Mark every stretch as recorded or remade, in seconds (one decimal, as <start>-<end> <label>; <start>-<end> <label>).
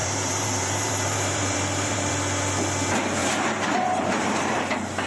0.0-2.1 remade; 2.1-3.2 recorded; 3.2-4.6 remade; 4.6-5.1 recorded